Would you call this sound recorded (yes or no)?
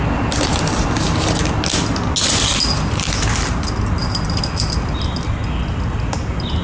yes